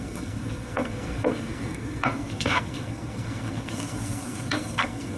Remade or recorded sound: remade